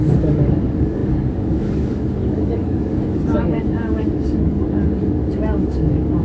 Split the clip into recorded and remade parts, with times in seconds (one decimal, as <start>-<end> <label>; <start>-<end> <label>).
0.0-6.2 remade